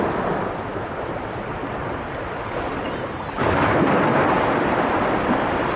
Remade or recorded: recorded